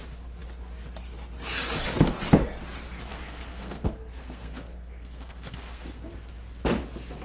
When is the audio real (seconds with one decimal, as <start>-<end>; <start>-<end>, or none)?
0.0-3.1; 6.1-7.2